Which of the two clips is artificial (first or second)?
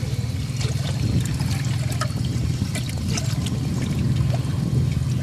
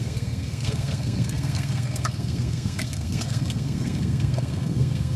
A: second